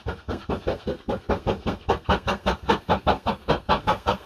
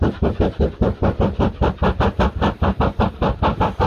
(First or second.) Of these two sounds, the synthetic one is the first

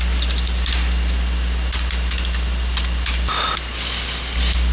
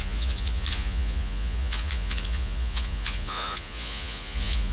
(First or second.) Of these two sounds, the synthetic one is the second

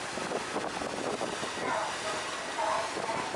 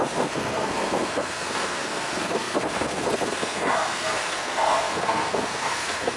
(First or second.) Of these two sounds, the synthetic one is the second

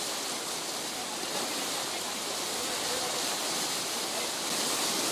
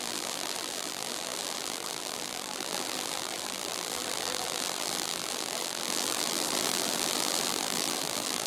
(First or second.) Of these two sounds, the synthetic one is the second